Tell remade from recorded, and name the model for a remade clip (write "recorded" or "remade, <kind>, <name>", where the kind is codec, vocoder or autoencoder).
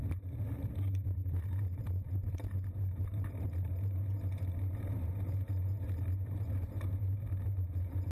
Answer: remade, vocoder, BigVGAN v2